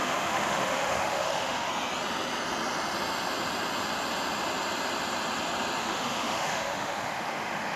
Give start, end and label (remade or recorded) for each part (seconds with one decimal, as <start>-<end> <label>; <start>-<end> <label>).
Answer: 0.0-1.7 remade; 1.7-5.8 recorded; 5.8-7.8 remade